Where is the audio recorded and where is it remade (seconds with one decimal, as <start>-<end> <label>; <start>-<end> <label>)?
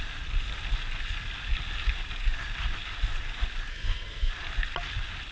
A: 0.0-3.7 recorded; 3.7-4.3 remade; 4.3-5.3 recorded